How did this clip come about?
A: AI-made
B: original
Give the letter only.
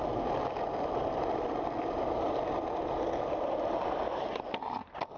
B